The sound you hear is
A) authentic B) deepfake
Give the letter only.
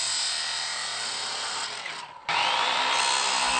A